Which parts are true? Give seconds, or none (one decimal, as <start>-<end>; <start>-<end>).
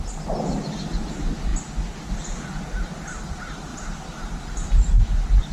0.0-5.5